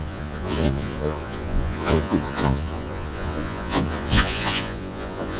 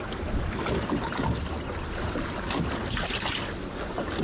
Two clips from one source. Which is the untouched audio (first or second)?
second